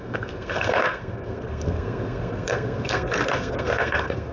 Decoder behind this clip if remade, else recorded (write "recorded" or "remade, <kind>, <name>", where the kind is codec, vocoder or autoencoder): remade, codec, SNAC